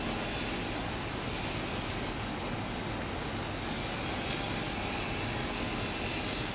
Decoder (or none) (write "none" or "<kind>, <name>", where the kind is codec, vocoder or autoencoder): none